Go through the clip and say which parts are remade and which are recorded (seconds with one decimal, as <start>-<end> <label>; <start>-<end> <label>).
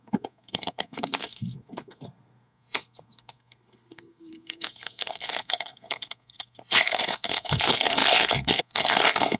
0.0-9.4 remade